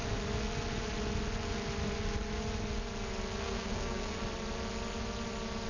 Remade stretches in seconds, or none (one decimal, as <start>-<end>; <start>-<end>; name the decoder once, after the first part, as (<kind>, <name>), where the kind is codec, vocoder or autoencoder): 3.4-4.2 (codec, SNAC)